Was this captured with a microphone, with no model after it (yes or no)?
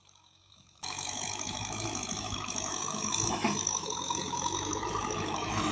no